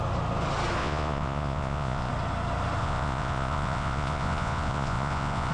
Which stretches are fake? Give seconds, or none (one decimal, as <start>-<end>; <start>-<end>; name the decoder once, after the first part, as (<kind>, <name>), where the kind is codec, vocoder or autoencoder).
0.8-2.1 (vocoder, Vocos); 2.8-5.5